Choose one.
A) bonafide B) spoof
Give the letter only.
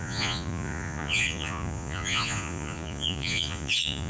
B